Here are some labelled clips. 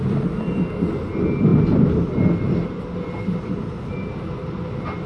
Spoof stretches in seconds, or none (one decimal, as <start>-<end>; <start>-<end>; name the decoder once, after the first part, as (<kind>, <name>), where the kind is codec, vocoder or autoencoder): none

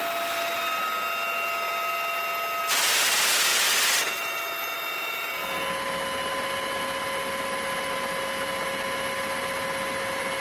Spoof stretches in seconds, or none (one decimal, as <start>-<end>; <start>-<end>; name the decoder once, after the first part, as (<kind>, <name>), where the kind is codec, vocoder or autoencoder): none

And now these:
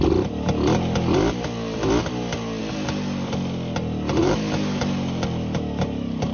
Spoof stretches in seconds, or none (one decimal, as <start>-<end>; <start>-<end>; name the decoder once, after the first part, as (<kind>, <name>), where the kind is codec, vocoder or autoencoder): 4.2-4.8 (autoencoder, DAC-VAE)

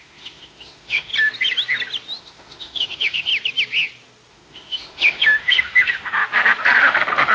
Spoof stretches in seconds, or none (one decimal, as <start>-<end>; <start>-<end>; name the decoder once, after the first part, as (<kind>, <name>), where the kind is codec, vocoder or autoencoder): 0.0-1.1 (autoencoder, DAC-VAE); 2.2-3.3; 4.3-6.2; 6.8-7.3

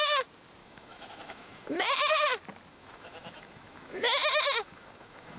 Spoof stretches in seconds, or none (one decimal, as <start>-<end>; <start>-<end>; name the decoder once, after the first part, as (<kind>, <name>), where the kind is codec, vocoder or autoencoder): 0.6-2.1 (autoencoder, DAC-VAE); 2.7-5.4

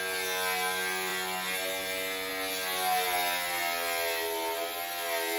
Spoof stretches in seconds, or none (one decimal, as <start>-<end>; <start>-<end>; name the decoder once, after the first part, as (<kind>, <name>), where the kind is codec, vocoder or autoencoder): none